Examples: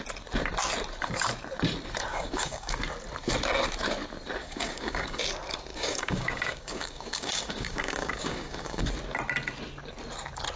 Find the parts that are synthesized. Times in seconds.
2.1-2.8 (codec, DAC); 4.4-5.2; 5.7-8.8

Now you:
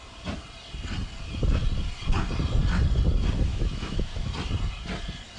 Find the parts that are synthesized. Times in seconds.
3.5-4.3 (autoencoder, DAC-VAE)

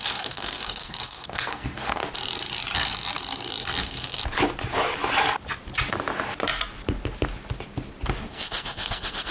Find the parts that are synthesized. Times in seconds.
0.0-2.0 (codec, SNAC); 3.8-4.2; 8.3-9.3

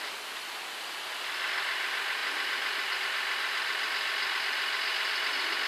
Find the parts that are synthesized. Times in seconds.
none

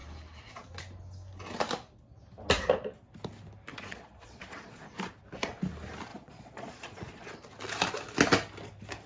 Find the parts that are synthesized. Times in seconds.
3.7-4.9 (vocoder, Vocos); 6.1-7.2

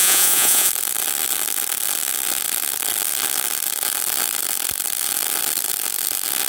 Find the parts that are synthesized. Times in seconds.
0.0-0.7 (vocoder, Vocos)

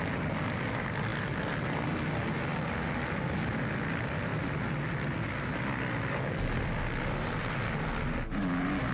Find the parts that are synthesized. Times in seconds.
none

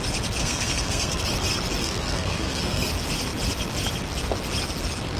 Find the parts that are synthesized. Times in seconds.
0.4-1.2 (codec, SNAC); 1.8-2.9